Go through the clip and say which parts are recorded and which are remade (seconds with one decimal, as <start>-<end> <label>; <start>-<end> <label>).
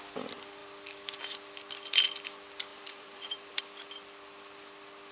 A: 0.0-2.7 recorded; 2.7-3.6 remade; 3.6-5.1 recorded